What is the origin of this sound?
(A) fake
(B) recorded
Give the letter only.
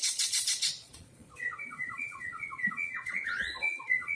A